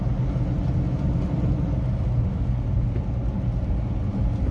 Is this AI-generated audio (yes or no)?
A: no